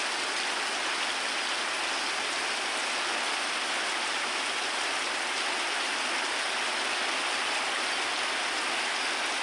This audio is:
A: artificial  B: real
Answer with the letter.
B